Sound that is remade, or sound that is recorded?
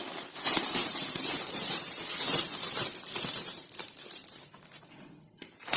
remade